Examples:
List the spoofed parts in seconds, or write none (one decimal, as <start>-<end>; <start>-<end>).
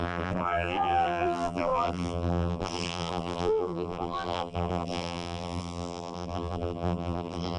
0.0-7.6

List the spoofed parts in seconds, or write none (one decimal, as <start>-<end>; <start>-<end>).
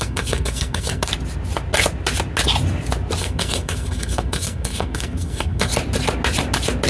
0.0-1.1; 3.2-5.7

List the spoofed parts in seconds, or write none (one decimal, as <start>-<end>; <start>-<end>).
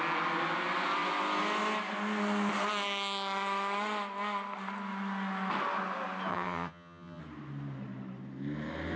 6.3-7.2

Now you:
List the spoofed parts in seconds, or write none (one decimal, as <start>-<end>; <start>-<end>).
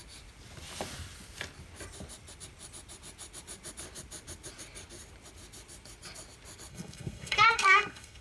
6.7-8.2